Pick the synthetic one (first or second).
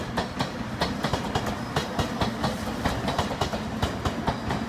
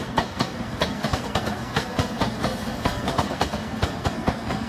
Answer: second